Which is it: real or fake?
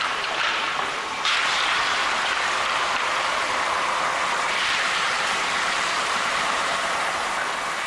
fake